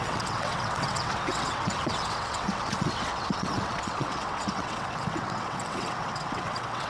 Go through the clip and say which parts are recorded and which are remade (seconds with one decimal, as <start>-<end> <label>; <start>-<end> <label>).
0.0-6.9 remade